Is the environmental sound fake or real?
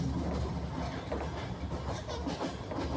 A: real